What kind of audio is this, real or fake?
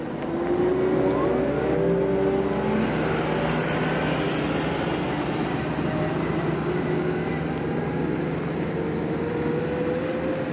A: real